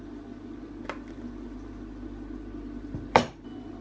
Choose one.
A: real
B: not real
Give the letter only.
A